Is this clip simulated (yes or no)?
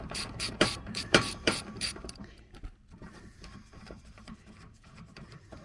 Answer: yes